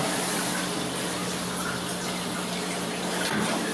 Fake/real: real